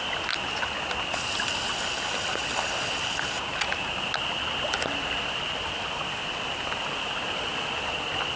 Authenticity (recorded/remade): recorded